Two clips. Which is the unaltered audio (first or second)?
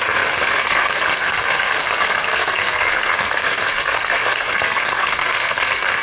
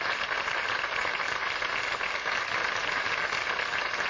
second